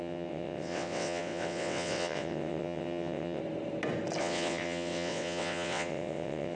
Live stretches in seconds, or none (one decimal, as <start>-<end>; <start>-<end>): 3.4-4.2